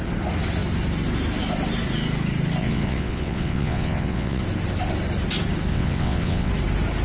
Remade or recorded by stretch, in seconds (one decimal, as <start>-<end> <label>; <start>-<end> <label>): 0.0-2.6 recorded; 2.6-4.4 remade; 4.4-5.7 recorded; 5.7-6.5 remade; 6.5-7.0 recorded